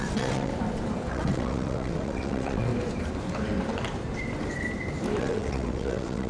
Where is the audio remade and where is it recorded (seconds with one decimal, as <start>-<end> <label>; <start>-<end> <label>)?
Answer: 0.0-0.5 remade; 0.5-1.1 recorded; 1.1-2.7 remade; 2.7-5.2 recorded; 5.2-6.3 remade